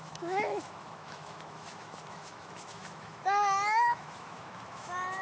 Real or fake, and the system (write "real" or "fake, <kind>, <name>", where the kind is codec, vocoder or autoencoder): fake, autoencoder, DAC-VAE